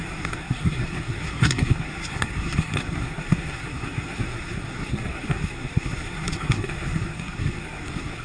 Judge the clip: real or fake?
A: fake